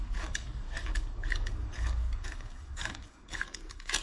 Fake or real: fake